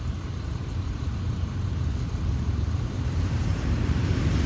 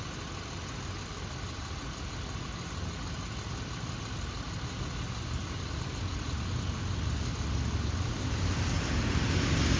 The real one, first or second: second